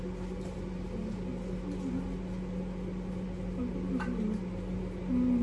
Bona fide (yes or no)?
yes